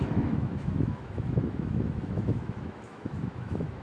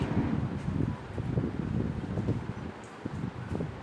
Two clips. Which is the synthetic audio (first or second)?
first